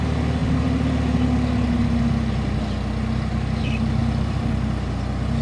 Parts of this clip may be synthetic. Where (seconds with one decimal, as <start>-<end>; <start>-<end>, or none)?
4.0-4.5